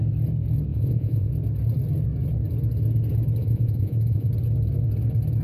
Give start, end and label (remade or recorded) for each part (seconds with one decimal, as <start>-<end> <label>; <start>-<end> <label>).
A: 0.0-0.7 recorded; 0.7-1.3 remade; 1.3-3.4 recorded; 3.4-4.3 remade; 4.3-5.4 recorded